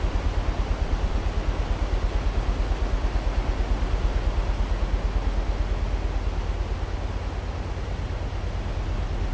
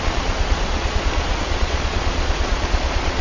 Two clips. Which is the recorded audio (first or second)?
first